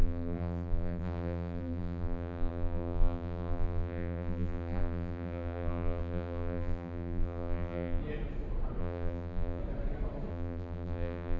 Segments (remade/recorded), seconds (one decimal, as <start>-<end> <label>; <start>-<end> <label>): 0.0-8.0 remade; 8.0-8.8 recorded; 8.8-9.6 remade; 9.6-10.3 recorded; 10.3-11.4 remade